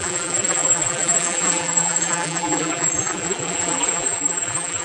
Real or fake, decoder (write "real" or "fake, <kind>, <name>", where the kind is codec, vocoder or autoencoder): fake, vocoder, BigVGAN v2